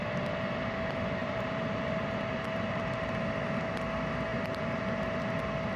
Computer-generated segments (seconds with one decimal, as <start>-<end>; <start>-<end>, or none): 1.2-2.8; 4.3-4.8